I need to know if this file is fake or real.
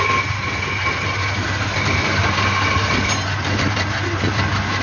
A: real